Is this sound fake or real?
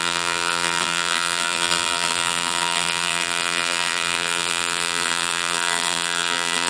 fake